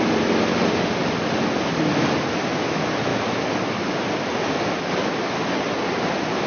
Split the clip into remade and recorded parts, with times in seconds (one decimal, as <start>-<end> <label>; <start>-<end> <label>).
0.0-6.5 recorded

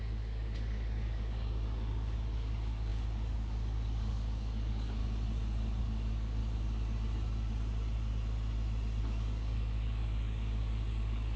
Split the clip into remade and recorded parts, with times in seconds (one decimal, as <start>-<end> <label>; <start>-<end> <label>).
0.0-5.0 remade; 5.0-5.8 recorded; 5.8-6.4 remade; 6.4-9.0 recorded; 9.0-11.4 remade

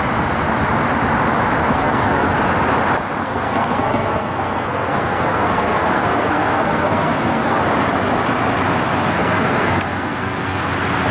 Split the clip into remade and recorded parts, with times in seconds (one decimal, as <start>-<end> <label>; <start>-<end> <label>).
0.0-1.6 recorded; 1.6-2.3 remade; 2.3-3.2 recorded; 3.2-7.6 remade; 7.6-9.0 recorded; 9.0-10.7 remade; 10.7-11.1 recorded

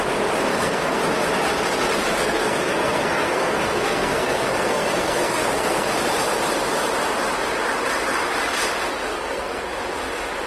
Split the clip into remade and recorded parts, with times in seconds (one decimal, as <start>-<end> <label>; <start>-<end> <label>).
0.0-0.5 recorded; 0.5-1.0 remade; 1.0-2.0 recorded; 2.0-5.9 remade; 5.9-9.1 recorded; 9.1-9.6 remade; 9.6-10.5 recorded

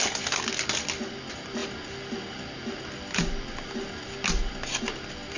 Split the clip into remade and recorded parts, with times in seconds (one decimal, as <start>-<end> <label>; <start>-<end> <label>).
0.0-5.4 recorded